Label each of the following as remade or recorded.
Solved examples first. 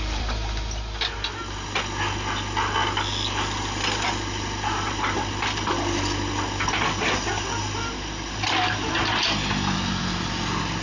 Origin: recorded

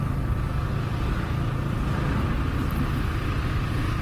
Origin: recorded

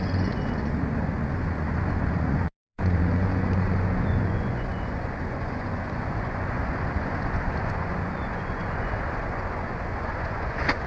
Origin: remade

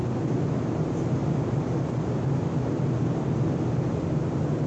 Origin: recorded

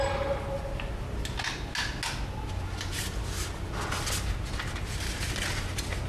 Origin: recorded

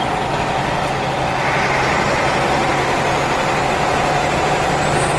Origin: recorded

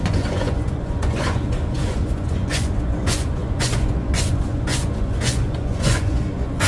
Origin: remade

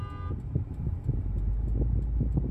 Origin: recorded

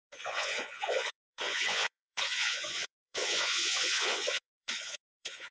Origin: remade